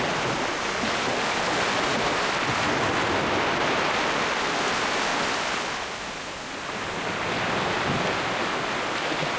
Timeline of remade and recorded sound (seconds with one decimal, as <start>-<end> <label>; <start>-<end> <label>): 0.0-9.4 recorded